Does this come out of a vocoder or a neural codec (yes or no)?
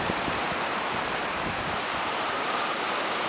yes